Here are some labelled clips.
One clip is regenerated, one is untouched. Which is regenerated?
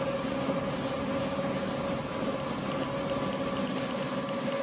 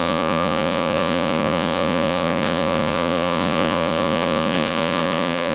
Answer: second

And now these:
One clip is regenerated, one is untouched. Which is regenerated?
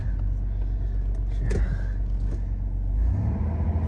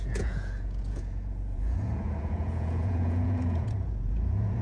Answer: second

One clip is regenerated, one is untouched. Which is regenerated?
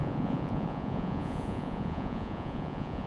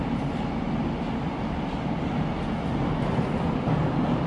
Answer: first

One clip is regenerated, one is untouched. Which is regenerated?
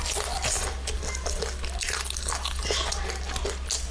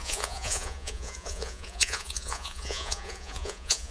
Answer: second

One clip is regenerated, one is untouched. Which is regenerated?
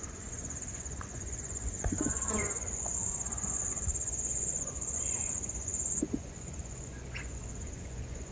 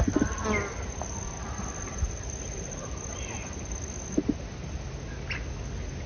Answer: first